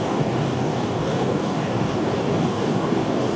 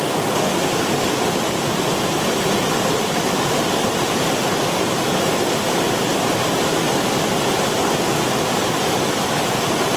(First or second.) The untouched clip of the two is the second